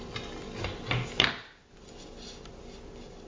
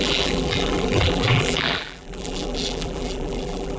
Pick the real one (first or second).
first